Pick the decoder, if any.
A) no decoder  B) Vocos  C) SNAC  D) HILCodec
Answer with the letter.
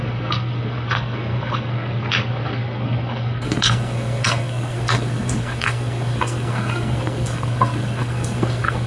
C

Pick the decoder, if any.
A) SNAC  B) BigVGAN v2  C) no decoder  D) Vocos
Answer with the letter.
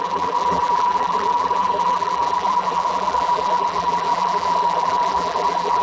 B